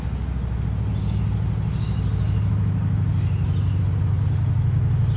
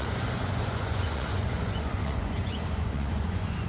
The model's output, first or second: second